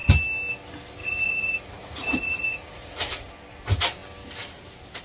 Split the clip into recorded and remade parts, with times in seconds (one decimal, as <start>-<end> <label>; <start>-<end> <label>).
0.0-1.0 recorded; 1.0-3.3 remade; 3.3-5.0 recorded